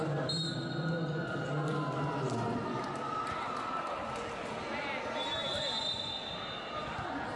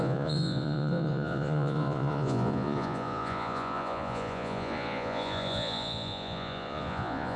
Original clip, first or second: first